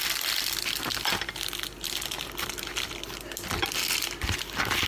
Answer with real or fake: real